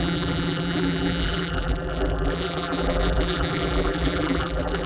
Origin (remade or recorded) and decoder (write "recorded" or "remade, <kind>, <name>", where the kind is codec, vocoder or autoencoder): remade, vocoder, BigVGAN v2